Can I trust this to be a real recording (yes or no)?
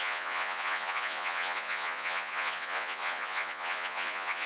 no